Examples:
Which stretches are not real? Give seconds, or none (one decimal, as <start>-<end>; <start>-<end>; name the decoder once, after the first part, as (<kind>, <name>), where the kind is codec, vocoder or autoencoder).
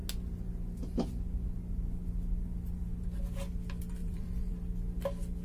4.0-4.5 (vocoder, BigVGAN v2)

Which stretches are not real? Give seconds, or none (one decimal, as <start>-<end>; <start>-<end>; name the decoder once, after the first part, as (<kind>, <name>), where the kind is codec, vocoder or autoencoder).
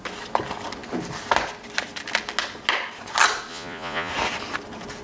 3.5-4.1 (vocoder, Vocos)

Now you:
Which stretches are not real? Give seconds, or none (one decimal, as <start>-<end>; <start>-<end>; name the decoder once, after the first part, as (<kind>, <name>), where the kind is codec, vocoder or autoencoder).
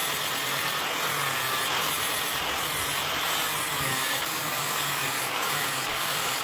3.8-6.4 (codec, DAC)